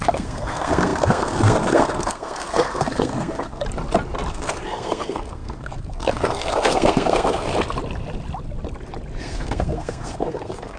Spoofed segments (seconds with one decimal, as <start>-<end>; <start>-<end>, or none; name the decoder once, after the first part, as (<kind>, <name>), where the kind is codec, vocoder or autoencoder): 0.0-3.6 (codec, SNAC); 4.3-7.5; 9.2-10.8